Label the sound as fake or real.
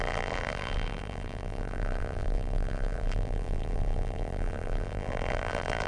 fake